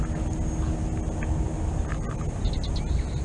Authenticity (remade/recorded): recorded